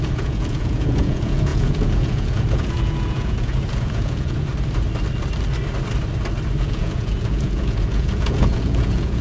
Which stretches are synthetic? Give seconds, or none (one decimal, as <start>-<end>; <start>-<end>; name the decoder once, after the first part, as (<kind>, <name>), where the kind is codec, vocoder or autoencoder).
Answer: 0.0-4.5 (vocoder, Vocos); 6.6-9.2